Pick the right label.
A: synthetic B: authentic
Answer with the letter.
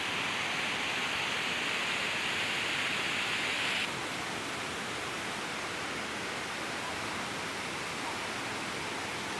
B